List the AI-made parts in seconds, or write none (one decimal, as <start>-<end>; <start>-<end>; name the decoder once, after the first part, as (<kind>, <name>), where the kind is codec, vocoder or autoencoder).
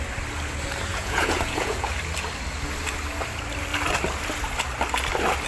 0.9-2.0 (vocoder, Vocos)